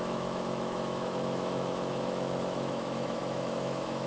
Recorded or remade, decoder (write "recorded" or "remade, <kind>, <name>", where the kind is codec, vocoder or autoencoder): remade, autoencoder, DAC-VAE